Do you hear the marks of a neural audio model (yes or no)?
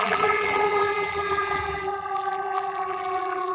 yes